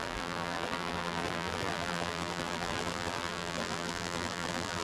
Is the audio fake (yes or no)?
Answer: yes